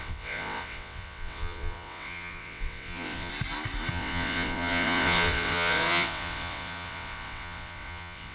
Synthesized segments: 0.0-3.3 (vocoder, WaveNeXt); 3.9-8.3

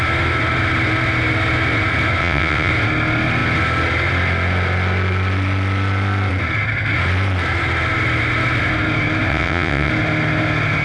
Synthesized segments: 2.2-2.7 (vocoder, WaveNeXt); 9.3-9.9

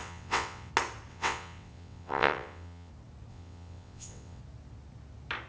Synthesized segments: 0.0-0.7 (vocoder, WaveNeXt); 1.1-2.9; 3.3-4.4

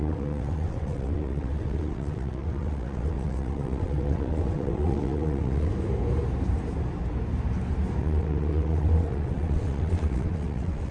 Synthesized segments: 0.0-5.7 (vocoder, WaveNeXt); 8.0-10.9

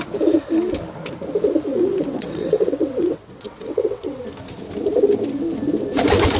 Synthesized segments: 1.7-4.2 (vocoder, WaveNeXt)

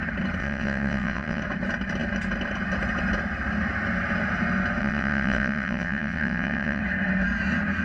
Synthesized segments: 0.4-1.4 (vocoder, WaveNeXt); 4.8-6.8